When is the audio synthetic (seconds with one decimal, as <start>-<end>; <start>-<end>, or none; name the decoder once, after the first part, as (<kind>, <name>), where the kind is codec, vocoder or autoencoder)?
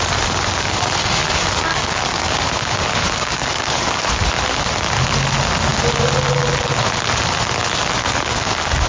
1.2-4.1 (codec, DAC); 8.0-8.9